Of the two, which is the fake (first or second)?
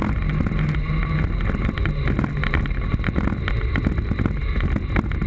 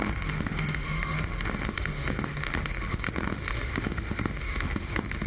second